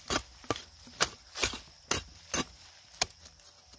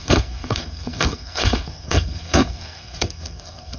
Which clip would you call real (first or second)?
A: first